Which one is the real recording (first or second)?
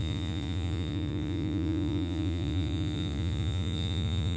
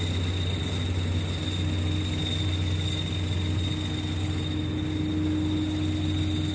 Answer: second